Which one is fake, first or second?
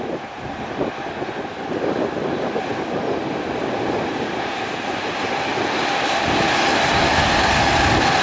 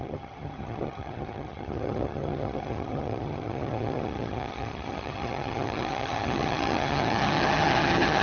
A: second